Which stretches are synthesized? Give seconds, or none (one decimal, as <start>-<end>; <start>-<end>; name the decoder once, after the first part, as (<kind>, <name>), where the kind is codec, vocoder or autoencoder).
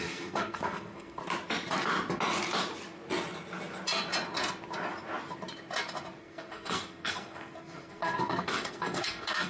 0.0-1.2 (codec, SNAC); 6.2-9.5